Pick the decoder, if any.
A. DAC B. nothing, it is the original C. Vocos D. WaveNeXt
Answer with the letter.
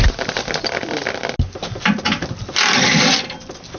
B